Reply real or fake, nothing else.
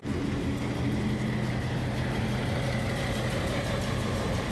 real